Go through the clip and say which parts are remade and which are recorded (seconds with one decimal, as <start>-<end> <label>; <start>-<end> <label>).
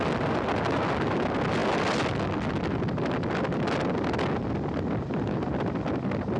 0.0-6.4 recorded